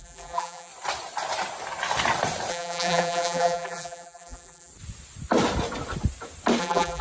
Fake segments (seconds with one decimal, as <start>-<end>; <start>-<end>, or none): 0.0-0.7; 2.5-4.7; 6.6-7.0